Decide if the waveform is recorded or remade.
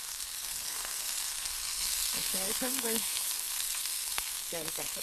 remade